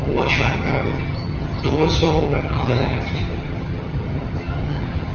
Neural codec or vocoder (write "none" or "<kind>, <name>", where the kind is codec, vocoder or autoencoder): vocoder, HiFi-GAN